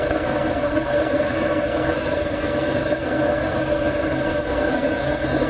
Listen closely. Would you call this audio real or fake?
fake